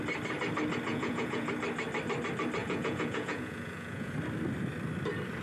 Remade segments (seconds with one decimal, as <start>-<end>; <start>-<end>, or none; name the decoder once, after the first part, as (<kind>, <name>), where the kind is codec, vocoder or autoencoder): 0.9-1.5 (vocoder, Vocos); 2.6-4.1